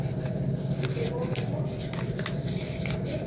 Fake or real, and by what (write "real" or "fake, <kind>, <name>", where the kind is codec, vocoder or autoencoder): fake, vocoder, BigVGAN v2